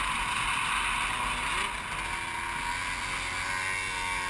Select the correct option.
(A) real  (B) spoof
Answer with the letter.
A